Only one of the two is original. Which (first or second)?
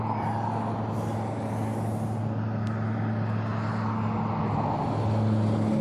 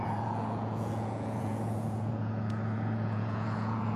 first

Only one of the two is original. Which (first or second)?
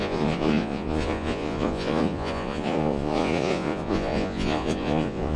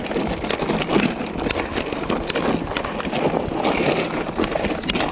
second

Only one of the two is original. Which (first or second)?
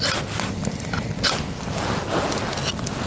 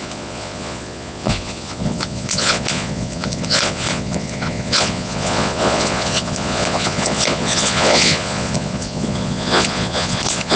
first